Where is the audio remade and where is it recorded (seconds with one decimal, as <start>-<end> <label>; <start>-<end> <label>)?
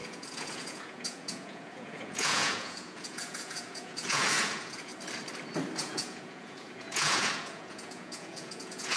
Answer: 0.0-4.9 remade; 4.9-5.8 recorded; 5.8-9.0 remade